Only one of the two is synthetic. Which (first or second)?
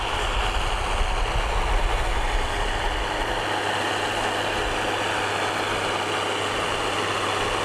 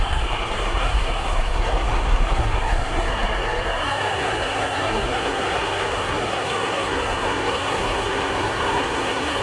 second